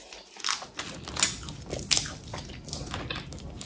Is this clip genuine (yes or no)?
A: yes